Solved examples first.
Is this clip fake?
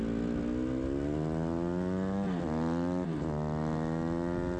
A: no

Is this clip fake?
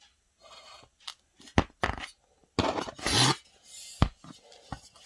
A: no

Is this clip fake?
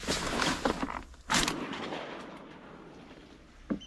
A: no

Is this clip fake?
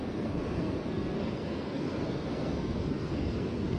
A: yes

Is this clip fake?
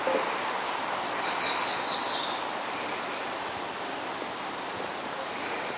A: no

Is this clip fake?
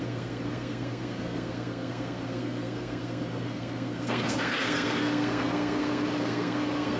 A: yes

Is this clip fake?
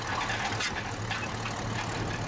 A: no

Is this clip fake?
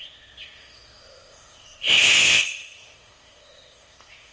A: yes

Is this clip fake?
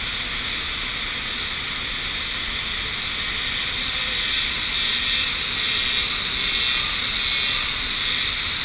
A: no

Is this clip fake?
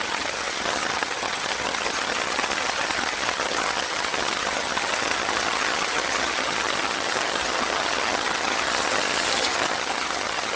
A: yes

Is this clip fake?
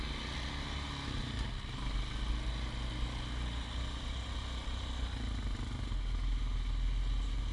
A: no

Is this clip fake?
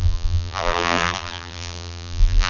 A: yes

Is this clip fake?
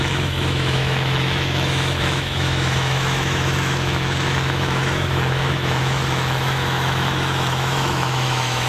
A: yes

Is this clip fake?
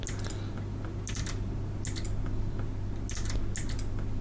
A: no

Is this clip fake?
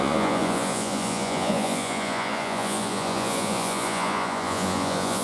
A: yes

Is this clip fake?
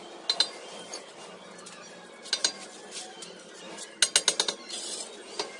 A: no